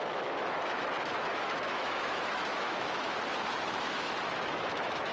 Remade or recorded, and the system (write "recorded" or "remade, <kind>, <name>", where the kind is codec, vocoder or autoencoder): remade, autoencoder, DAC-VAE